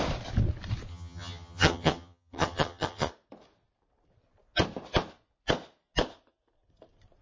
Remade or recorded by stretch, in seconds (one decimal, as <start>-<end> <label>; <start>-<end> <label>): 0.0-0.9 recorded; 0.9-3.1 remade; 3.1-7.2 recorded